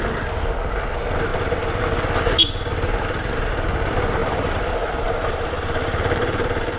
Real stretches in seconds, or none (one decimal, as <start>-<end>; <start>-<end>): 0.0-4.2